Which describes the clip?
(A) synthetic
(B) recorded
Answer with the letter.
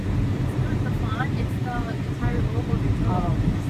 A